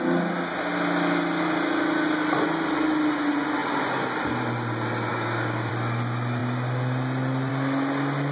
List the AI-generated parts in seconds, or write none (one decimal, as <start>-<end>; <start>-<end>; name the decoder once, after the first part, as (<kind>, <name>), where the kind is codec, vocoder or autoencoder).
5.1-5.7 (codec, DAC)